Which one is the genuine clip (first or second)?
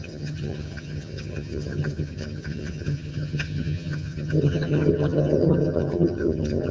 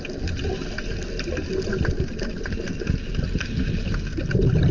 second